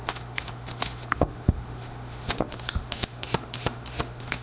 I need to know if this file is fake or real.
fake